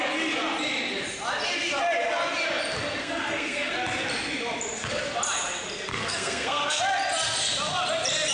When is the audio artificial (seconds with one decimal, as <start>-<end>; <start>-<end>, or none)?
3.0-3.7; 5.9-6.8